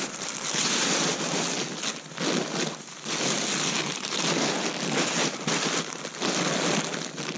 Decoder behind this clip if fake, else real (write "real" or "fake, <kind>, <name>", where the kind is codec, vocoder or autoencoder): real